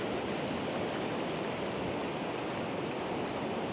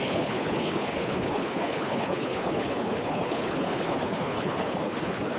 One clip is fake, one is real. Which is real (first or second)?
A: first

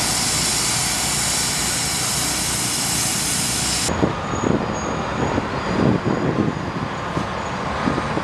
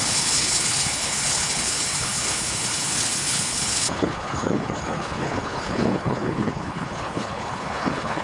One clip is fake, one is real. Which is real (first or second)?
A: first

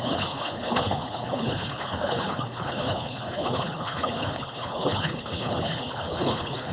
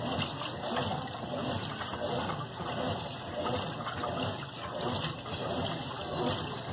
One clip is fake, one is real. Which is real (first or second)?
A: second